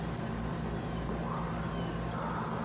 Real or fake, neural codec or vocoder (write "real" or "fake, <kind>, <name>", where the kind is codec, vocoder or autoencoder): real